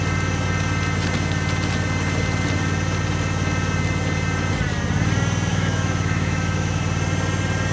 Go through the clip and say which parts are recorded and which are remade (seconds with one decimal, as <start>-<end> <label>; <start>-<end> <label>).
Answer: 0.0-5.5 recorded; 5.5-6.8 remade; 6.8-7.7 recorded